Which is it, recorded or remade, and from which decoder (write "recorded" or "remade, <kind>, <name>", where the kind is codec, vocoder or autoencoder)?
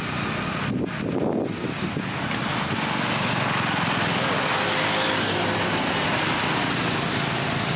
recorded